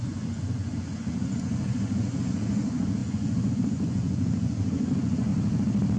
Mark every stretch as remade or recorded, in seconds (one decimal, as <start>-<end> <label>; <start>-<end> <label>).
0.0-5.3 remade; 5.3-6.0 recorded